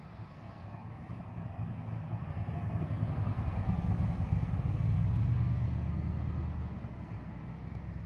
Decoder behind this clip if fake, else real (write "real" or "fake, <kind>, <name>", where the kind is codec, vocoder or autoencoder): fake, codec, SNAC